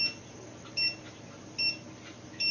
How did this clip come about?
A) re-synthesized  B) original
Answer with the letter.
B